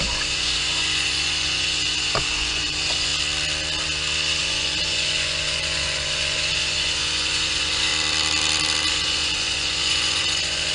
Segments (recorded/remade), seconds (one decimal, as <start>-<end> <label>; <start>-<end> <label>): 0.0-3.1 remade; 3.1-4.4 recorded; 4.4-7.9 remade; 7.9-8.9 recorded; 8.9-10.7 remade